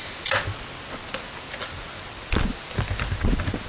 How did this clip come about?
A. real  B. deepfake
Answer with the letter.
A